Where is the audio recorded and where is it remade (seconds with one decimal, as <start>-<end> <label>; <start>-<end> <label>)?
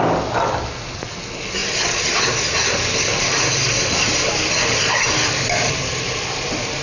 0.0-6.8 recorded